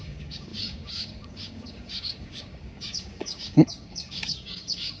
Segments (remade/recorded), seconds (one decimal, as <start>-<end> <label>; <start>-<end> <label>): 0.0-5.0 remade